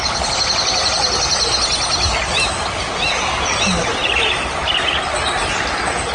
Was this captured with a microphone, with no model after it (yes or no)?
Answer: yes